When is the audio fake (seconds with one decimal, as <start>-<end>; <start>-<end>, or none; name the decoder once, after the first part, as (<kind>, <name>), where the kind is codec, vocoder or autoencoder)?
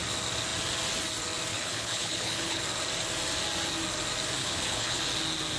1.5-2.6 (codec, HILCodec); 4.4-5.0